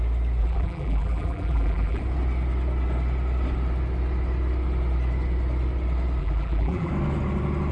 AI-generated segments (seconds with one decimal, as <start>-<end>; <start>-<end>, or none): 0.4-2.0; 6.2-6.9